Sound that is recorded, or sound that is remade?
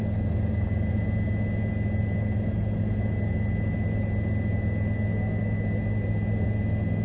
recorded